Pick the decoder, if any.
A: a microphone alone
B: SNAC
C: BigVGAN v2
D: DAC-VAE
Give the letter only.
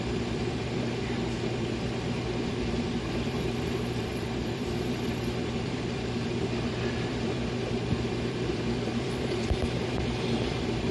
C